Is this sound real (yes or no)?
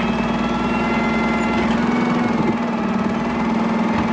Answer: yes